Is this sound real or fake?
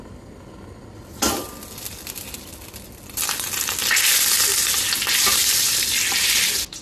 real